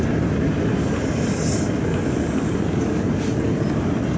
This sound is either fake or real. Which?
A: real